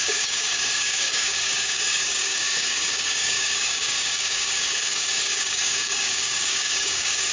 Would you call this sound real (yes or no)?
no